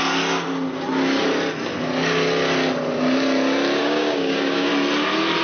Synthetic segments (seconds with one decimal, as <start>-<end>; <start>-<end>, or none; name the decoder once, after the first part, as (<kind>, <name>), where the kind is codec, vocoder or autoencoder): 3.8-4.7 (codec, DAC)